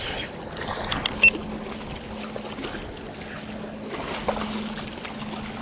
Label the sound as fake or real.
real